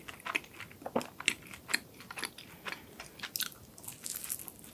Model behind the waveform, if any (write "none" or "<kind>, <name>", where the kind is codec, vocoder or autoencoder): none